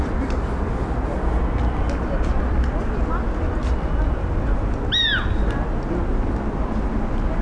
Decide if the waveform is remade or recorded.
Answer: recorded